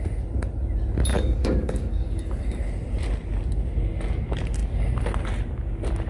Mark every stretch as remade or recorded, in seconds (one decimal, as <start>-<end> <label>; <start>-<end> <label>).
0.0-1.1 recorded; 1.1-2.4 remade; 2.4-6.1 recorded